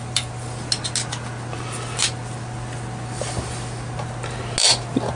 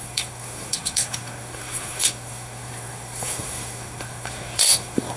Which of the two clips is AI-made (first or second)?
second